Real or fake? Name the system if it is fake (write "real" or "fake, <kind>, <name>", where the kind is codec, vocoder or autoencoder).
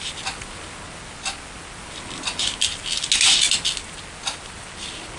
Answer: real